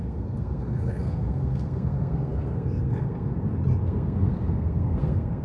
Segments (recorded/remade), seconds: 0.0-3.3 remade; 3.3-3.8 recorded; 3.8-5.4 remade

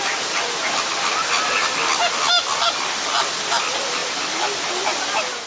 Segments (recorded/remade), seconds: 0.0-5.5 recorded

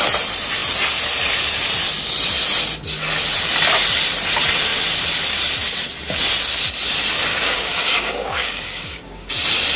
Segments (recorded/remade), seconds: 0.0-7.3 recorded; 7.3-9.3 remade; 9.3-9.8 recorded

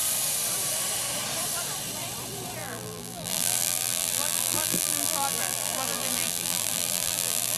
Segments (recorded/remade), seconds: 0.0-2.6 recorded; 2.6-7.6 remade

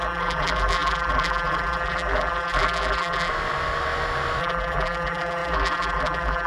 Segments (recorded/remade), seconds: 0.0-3.3 remade; 3.3-4.4 recorded; 4.4-6.5 remade

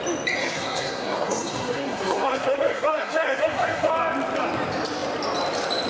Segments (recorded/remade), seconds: 0.0-0.4 recorded; 0.4-3.9 remade; 3.9-5.9 recorded